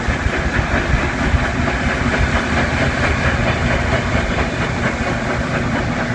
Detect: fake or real real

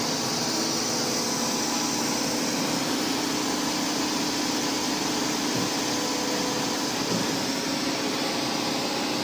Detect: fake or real real